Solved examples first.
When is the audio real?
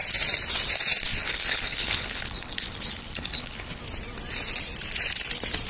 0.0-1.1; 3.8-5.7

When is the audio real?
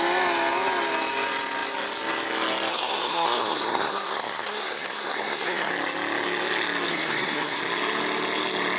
0.0-2.7; 5.7-6.9; 7.6-8.8